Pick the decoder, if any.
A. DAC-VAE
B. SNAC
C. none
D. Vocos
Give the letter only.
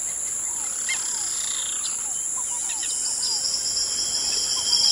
C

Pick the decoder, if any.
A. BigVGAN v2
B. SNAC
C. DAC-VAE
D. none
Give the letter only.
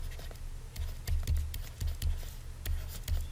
D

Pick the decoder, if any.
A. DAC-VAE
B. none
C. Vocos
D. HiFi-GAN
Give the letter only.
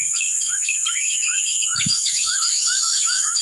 A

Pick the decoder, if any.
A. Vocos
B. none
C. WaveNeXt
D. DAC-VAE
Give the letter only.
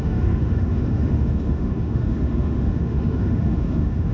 D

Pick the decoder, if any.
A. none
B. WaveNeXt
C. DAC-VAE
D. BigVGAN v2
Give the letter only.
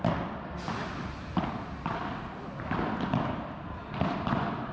A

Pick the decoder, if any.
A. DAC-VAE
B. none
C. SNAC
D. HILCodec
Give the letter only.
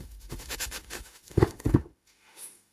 A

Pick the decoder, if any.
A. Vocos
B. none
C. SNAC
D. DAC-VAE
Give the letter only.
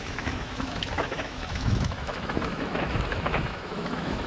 D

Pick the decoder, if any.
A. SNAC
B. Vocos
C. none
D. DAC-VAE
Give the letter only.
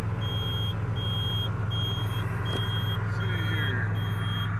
C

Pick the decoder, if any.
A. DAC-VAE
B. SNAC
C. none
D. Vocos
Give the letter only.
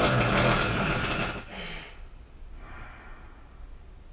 C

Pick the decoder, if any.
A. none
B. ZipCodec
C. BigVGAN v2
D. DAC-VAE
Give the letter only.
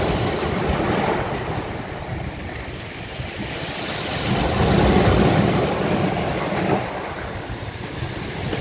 A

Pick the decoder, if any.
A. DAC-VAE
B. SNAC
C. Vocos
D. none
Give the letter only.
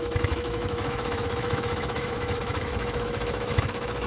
A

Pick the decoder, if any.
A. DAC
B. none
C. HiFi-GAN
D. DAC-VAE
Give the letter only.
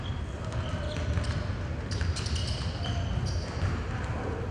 B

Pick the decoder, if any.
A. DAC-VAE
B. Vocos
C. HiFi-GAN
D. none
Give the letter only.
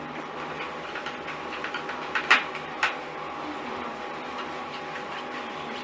D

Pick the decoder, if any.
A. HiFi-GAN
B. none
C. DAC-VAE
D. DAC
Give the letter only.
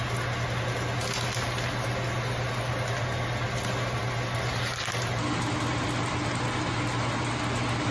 B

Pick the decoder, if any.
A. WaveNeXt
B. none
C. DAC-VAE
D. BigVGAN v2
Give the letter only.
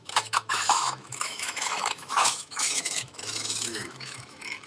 C